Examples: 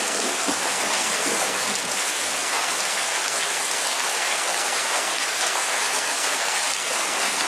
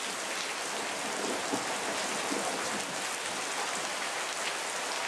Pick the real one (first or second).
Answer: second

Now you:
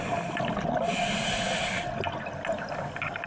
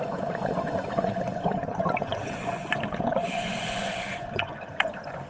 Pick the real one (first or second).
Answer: first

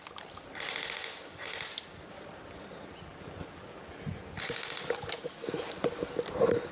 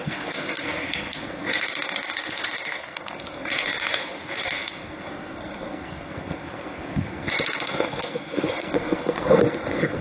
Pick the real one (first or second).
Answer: first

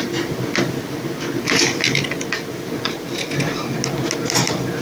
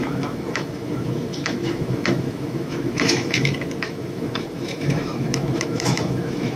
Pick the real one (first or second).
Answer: first